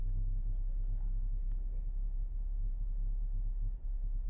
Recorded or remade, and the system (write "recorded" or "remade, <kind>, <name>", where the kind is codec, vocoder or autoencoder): recorded